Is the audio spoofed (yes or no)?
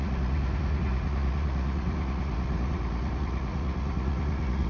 yes